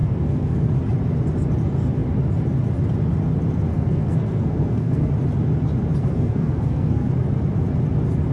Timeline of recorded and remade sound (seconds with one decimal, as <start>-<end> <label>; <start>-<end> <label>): 0.0-0.7 remade; 0.7-3.7 recorded; 3.7-5.1 remade; 5.1-6.0 recorded; 6.0-7.1 remade; 7.1-8.3 recorded